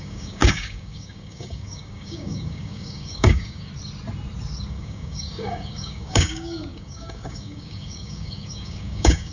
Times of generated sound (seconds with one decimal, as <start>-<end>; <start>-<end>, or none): 0.0-3.7; 4.7-9.3

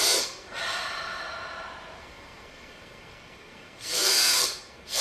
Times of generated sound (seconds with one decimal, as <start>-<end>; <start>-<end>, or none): 0.0-0.6; 2.0-5.0

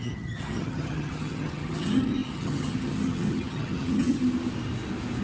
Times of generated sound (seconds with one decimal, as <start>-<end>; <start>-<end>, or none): 0.0-4.2

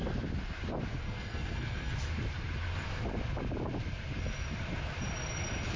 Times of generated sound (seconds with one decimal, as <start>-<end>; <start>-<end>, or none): 0.9-1.9

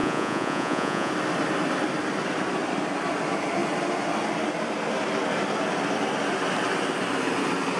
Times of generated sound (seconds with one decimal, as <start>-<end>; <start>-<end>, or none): 0.0-1.1

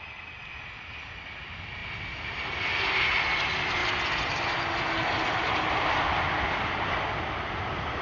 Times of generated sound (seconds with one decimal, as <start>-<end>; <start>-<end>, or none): none

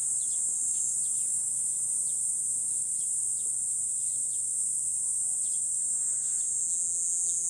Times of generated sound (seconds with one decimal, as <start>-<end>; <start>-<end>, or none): 6.6-7.5

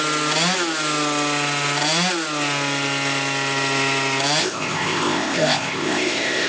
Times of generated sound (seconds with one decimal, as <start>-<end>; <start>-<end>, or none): 4.4-6.5